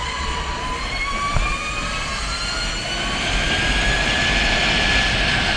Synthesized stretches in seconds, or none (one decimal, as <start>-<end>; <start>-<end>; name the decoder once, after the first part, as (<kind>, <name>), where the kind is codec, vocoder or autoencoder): 0.0-0.6 (vocoder, Vocos)